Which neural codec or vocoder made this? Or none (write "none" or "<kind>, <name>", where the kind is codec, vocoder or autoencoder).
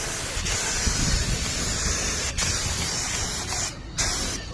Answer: none